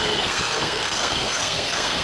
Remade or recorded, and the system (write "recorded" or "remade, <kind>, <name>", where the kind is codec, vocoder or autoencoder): remade, codec, SNAC